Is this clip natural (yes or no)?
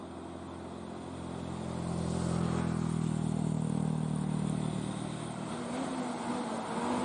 yes